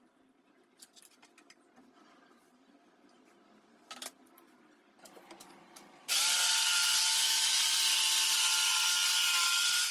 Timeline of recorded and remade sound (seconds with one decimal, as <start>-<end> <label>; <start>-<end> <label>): 0.0-7.0 recorded; 7.0-7.6 remade; 7.6-9.9 recorded